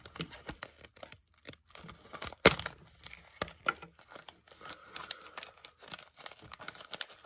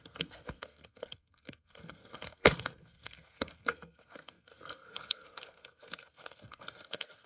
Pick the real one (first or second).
first